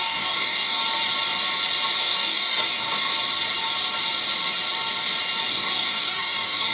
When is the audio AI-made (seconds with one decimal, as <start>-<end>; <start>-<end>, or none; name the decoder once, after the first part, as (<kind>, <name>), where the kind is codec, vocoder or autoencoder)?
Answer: 0.0-0.8 (codec, DAC); 2.0-3.1; 5.5-6.7